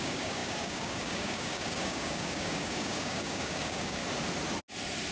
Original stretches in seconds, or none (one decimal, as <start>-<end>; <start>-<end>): 4.0-5.1